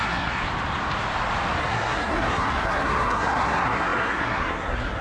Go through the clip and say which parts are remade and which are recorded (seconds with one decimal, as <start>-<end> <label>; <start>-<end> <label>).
0.0-0.4 remade; 0.4-1.6 recorded; 1.6-5.0 remade